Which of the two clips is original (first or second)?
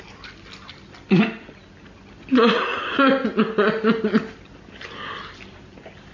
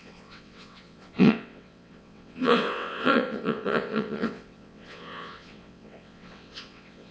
first